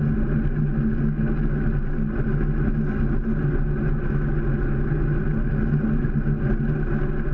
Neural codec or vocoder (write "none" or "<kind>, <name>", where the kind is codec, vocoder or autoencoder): none